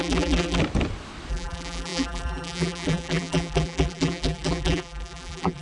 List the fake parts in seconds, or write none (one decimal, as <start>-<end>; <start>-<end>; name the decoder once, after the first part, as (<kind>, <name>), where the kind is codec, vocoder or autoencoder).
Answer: 0.0-0.6 (vocoder, BigVGAN v2); 1.3-5.6